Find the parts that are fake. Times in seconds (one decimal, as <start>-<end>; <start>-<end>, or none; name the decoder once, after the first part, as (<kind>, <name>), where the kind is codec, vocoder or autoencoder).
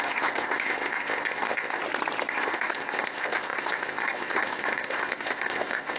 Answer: 0.0-1.8 (codec, ZipCodec); 2.3-6.0